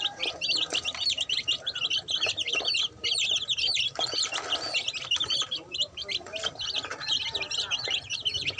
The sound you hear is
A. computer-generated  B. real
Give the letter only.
A